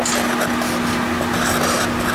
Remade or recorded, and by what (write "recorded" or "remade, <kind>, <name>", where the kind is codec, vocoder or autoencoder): recorded